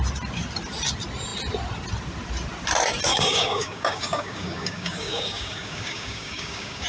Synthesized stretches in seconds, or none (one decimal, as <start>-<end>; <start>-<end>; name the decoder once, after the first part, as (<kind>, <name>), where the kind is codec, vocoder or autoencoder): 3.1-6.9 (codec, DAC)